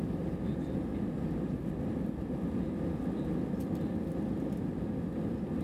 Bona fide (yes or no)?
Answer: yes